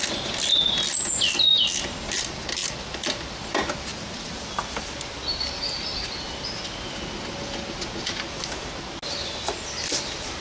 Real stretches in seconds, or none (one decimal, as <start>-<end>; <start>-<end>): 0.0-2.6; 3.1-10.4